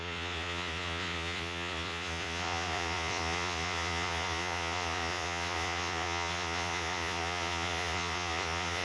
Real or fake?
fake